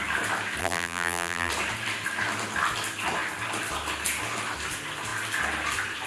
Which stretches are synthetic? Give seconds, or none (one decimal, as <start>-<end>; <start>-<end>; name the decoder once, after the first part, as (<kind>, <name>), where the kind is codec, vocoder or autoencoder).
0.6-1.5 (vocoder, BigVGAN v2)